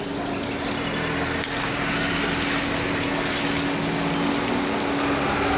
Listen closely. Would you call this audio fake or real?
real